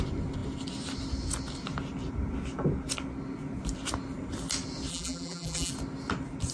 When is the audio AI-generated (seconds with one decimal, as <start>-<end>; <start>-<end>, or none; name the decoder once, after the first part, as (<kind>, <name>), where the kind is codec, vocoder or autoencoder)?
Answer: 4.9-5.7 (vocoder, BigVGAN v2)